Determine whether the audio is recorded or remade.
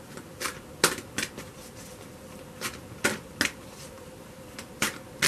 recorded